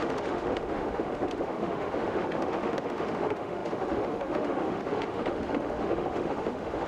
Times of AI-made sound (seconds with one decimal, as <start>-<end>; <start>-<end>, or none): 0.0-6.9